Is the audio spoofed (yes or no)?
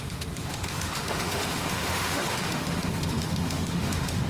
yes